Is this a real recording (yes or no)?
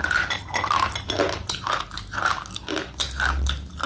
yes